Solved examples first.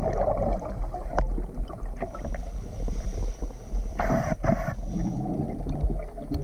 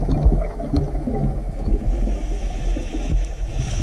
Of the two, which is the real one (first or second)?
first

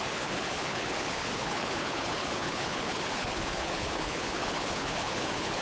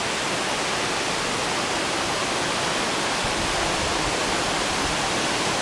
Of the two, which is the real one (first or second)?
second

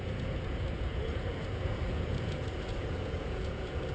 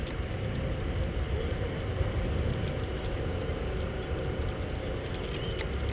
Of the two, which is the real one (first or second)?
second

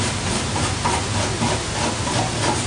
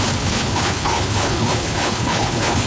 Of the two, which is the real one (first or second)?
first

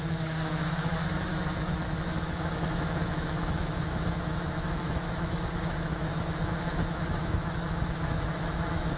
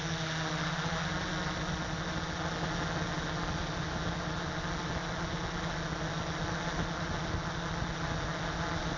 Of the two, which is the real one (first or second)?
second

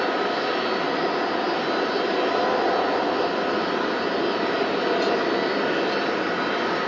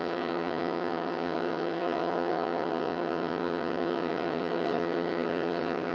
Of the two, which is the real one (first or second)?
first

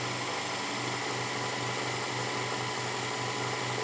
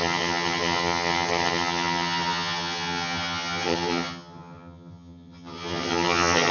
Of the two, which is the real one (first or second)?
first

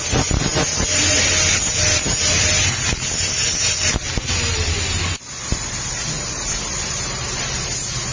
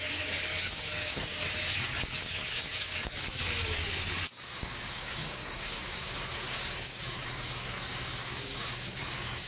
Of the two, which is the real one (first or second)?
first